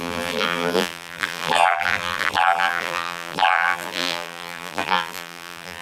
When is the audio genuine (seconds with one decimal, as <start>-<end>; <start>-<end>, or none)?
none